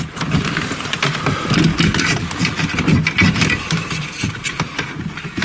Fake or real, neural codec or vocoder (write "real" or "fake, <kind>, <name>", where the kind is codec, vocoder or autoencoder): real